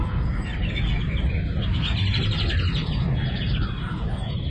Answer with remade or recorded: recorded